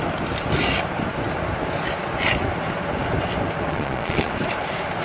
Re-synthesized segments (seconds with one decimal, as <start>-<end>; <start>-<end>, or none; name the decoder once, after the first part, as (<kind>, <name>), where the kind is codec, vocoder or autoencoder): 3.7-4.3 (vocoder, Vocos)